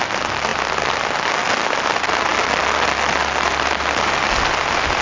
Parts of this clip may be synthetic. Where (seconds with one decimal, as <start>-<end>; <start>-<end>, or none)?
none